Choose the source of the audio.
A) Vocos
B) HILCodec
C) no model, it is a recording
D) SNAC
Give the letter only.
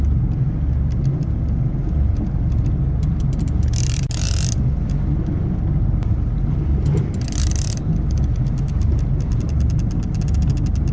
C